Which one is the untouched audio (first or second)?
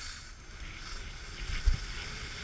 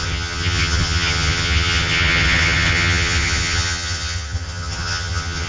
first